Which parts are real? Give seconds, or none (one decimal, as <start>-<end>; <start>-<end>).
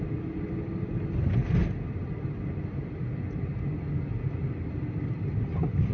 0.0-5.9